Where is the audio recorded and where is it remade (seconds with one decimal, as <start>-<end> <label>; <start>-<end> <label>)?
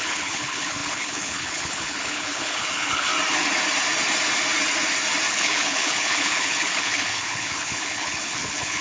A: 0.0-3.1 remade; 3.1-5.3 recorded; 5.3-8.8 remade